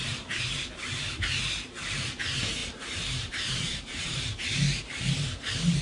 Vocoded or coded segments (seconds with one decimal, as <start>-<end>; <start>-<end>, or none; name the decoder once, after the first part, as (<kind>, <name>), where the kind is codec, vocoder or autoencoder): 0.0-0.8 (vocoder, BigVGAN v2); 2.6-4.6